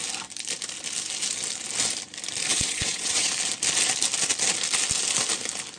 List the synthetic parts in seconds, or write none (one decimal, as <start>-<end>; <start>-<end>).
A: 2.5-3.3

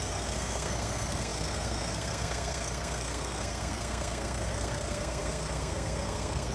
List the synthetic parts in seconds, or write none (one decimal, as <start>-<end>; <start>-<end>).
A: 0.0-6.5

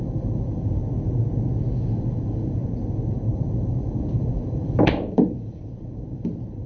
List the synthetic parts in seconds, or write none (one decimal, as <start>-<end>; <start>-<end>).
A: 0.0-0.8; 1.6-2.6; 3.1-6.7

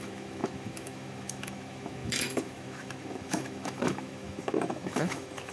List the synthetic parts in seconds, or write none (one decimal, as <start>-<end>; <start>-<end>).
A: 0.0-5.5

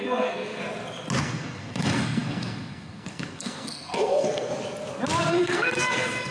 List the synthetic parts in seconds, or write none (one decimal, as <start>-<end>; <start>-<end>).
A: 0.0-0.6; 1.2-4.5; 5.3-6.3